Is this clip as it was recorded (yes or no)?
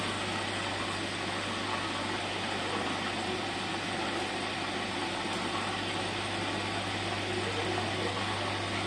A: yes